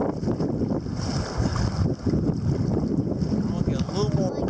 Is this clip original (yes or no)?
yes